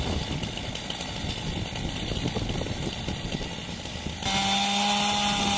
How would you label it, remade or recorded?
recorded